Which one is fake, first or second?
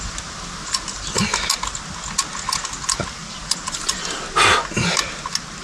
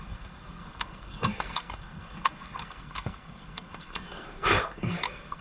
second